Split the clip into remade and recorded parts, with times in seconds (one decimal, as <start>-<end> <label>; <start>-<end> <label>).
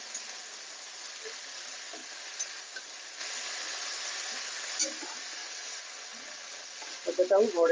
0.0-5.4 recorded; 5.4-6.9 remade; 6.9-7.7 recorded